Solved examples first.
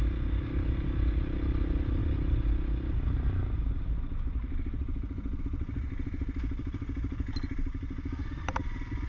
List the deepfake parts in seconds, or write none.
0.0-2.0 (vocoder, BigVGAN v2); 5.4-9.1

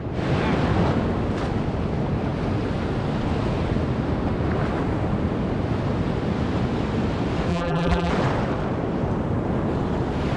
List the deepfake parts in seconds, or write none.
7.5-8.1 (vocoder, BigVGAN v2)

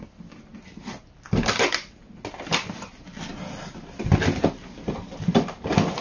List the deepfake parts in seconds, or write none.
none

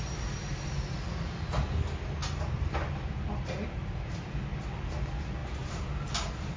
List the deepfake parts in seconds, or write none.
5.4-6.6 (vocoder, BigVGAN v2)

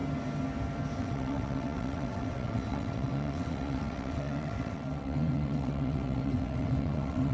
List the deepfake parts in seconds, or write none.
1.0-7.3 (vocoder, WaveNeXt)